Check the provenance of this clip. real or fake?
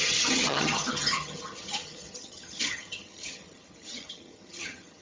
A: fake